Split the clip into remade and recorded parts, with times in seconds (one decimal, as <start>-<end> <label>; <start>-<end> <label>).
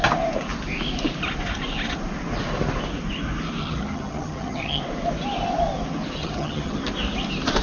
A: 0.0-3.6 recorded; 3.6-4.8 remade; 4.8-6.2 recorded; 6.2-6.8 remade; 6.8-7.6 recorded